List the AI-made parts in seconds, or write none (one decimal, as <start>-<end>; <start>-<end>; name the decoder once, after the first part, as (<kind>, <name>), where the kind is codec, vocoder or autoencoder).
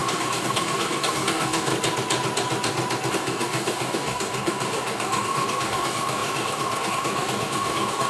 0.0-1.7 (codec, DAC); 3.1-8.1